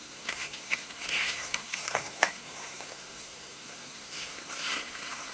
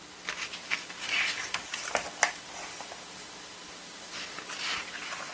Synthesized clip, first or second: first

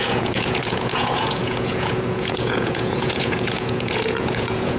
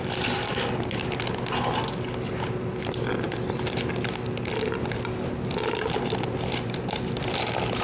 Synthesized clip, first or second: first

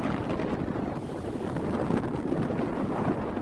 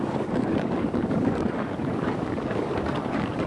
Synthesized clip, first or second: second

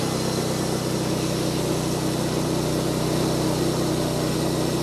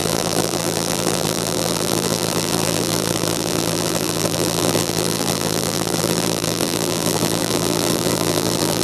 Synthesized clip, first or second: second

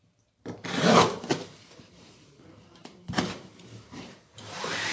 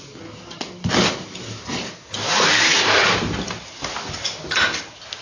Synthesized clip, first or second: first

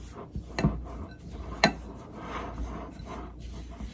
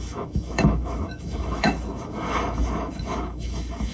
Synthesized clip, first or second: second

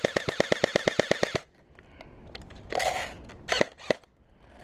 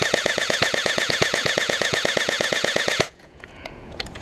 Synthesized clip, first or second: second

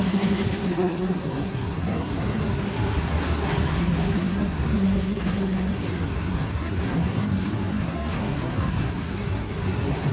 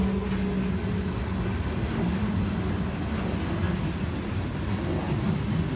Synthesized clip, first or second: first